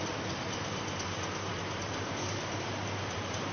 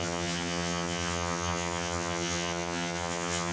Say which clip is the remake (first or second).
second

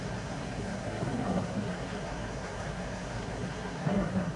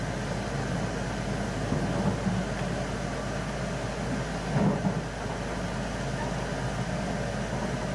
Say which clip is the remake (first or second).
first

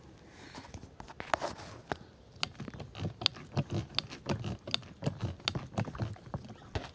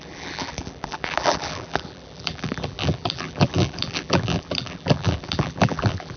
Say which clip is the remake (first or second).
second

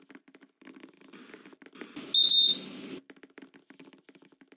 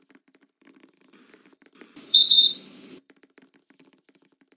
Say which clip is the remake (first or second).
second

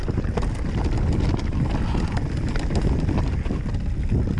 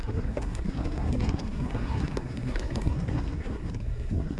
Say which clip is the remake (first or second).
second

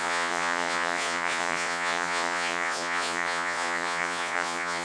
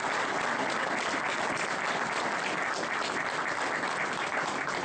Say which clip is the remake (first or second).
first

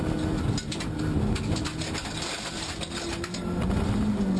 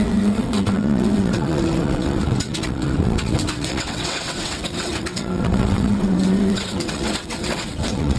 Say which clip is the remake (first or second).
second